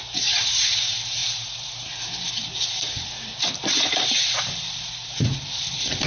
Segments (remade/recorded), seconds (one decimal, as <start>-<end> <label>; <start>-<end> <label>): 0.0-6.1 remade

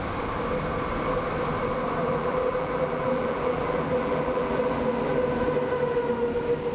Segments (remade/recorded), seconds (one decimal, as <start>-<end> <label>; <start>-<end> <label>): 0.0-2.0 recorded; 2.0-4.8 remade; 4.8-6.7 recorded

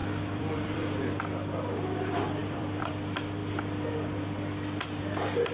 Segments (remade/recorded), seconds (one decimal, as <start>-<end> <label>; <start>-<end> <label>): 0.0-1.2 remade; 1.2-2.4 recorded; 2.4-2.9 remade; 2.9-5.5 recorded